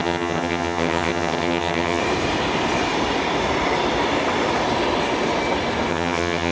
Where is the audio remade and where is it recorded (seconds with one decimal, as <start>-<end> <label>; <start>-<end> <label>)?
0.0-2.0 remade; 2.0-5.9 recorded; 5.9-6.5 remade